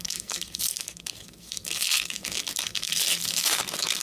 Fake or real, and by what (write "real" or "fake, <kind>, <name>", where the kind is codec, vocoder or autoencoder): fake, codec, SNAC